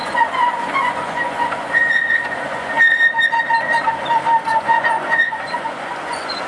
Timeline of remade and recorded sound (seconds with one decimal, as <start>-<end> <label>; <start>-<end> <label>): 0.0-2.7 remade; 2.7-4.5 recorded; 4.5-6.5 remade